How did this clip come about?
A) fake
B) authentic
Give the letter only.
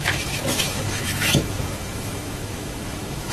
A